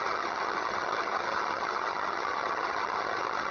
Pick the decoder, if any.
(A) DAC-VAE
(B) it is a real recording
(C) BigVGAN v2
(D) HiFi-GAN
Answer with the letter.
D